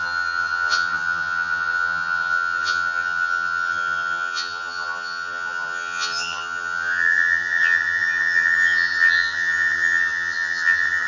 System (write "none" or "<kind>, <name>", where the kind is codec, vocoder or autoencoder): vocoder, HiFi-GAN